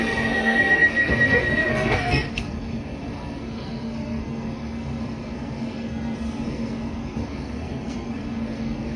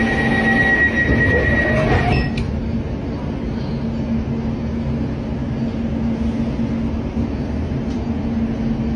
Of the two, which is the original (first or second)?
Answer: second